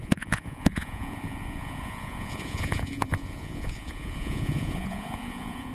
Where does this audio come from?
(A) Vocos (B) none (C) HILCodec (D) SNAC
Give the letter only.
A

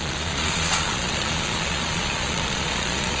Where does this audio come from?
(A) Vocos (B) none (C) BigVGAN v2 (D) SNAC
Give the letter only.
A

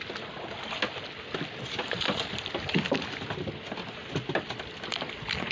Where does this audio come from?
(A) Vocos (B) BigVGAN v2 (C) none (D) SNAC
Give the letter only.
C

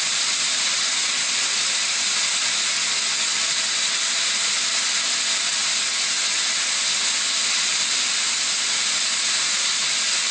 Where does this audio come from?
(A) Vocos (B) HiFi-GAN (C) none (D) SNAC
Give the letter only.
C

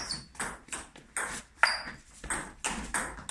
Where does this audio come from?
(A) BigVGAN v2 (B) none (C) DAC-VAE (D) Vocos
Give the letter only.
B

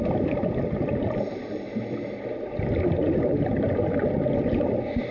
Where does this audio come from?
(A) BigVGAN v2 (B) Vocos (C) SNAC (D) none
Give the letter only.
D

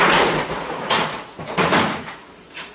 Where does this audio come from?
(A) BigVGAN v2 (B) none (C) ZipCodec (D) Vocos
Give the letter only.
D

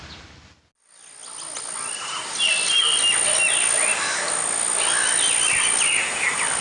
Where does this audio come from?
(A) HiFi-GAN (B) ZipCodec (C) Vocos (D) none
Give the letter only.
D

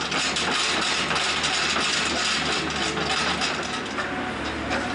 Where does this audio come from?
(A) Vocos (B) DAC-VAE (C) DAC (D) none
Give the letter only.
D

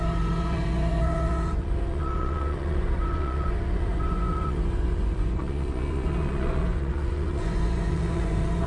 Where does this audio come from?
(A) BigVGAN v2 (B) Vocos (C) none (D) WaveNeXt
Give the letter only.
B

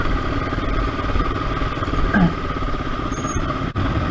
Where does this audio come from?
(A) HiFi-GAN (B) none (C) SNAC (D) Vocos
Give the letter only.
B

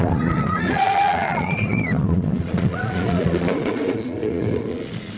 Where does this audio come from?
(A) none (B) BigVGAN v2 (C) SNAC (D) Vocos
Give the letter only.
D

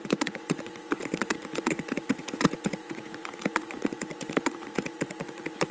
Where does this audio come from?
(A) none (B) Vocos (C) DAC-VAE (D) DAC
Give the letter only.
B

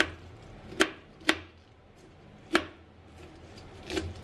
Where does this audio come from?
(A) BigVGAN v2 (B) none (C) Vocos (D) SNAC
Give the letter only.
B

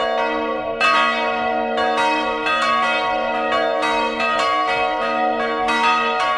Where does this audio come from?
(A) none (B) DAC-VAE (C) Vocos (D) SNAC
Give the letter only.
A